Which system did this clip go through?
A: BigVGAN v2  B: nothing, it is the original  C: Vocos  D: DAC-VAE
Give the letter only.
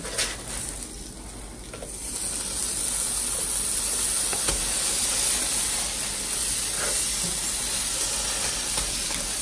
B